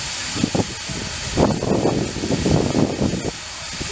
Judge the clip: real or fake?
real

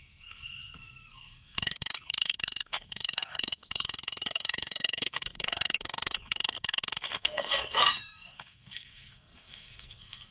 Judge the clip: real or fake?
fake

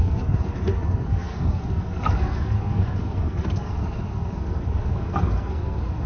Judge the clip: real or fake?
fake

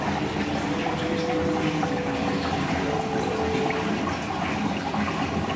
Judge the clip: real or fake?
real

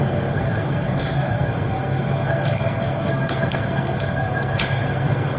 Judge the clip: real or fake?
fake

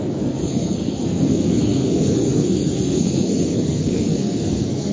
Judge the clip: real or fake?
fake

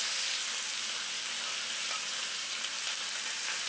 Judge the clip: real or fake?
real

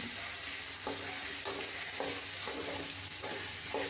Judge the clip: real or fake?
real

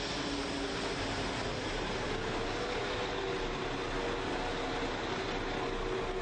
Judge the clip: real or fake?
real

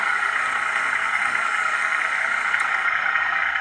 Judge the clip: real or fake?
fake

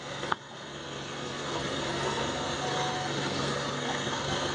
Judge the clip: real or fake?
fake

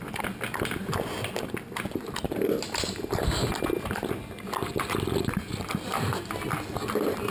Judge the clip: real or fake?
real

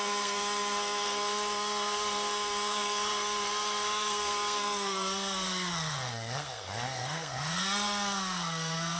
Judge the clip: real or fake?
fake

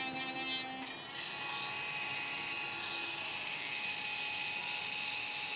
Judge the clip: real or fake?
real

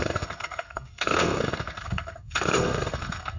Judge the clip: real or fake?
fake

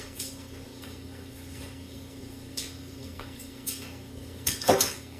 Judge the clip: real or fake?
fake